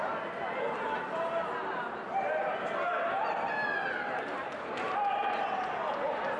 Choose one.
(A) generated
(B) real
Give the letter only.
B